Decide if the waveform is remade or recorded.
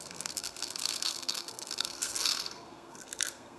remade